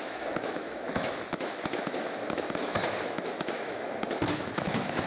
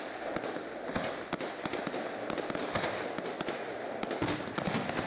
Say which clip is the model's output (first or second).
first